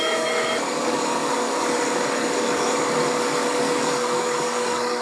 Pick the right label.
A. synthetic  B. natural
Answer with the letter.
A